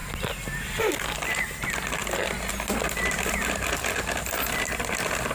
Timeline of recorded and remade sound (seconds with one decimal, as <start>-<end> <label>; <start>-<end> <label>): 0.0-5.3 recorded